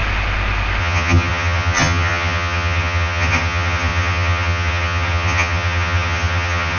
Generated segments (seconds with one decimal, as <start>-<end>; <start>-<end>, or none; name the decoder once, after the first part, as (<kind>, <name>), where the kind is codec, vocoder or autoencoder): 0.8-6.8 (vocoder, HiFi-GAN)